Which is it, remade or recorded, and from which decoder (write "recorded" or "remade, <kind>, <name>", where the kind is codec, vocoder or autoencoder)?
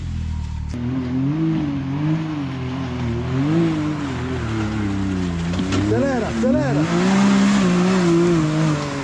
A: recorded